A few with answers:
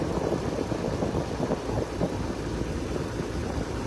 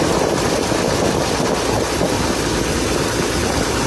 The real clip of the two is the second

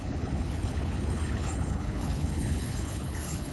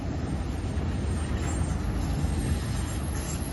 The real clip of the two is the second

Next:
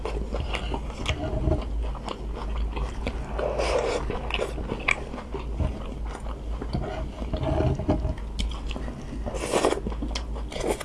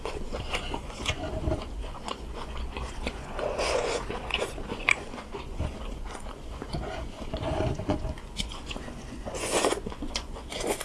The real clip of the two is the first